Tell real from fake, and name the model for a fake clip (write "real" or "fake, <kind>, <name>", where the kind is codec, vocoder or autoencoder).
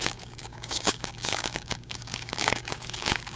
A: fake, codec, DAC